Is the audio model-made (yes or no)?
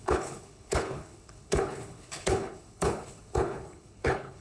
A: yes